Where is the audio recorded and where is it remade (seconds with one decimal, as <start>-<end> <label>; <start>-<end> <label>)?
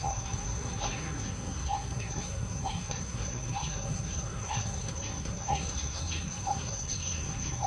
0.0-7.7 remade